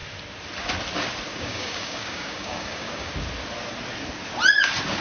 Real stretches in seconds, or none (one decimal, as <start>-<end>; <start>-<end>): 0.0-1.3; 3.1-5.0

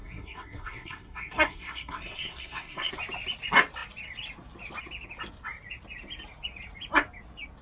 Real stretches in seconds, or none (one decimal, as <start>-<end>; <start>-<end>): 2.9-7.6

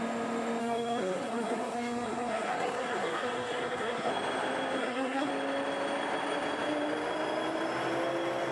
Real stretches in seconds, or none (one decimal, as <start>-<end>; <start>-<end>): 0.0-0.6; 4.1-4.8; 5.3-8.5

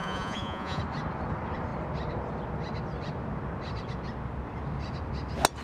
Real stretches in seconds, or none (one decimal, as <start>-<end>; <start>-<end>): 0.8-5.6

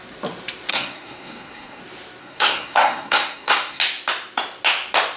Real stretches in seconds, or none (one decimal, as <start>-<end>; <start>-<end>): 0.0-0.7; 1.8-2.2; 3.8-5.2

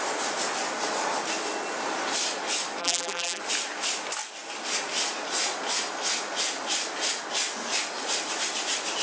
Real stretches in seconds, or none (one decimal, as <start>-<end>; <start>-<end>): 0.0-2.8; 3.4-9.0